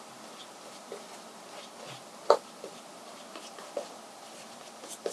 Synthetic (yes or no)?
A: no